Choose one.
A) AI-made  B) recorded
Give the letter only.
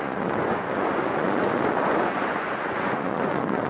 A